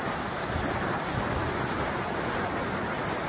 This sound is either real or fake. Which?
real